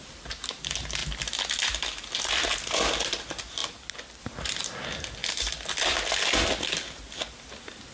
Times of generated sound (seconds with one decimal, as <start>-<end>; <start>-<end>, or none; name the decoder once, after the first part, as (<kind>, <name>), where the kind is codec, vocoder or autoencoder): none